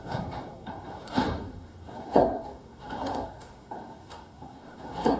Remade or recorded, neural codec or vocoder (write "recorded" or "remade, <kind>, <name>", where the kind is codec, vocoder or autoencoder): remade, codec, SNAC